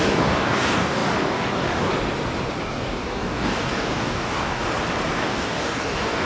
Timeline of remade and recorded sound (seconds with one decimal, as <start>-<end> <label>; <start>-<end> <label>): 0.0-1.9 remade; 1.9-2.6 recorded; 2.6-4.6 remade; 4.6-5.2 recorded; 5.2-6.3 remade